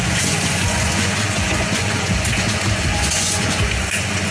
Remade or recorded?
remade